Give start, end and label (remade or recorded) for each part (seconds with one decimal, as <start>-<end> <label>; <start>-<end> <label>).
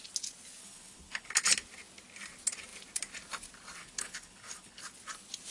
0.0-0.6 recorded; 0.6-1.3 remade; 1.3-3.8 recorded; 3.8-4.8 remade; 4.8-5.5 recorded